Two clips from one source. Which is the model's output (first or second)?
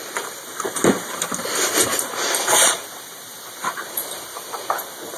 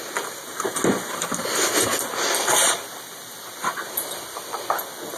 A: first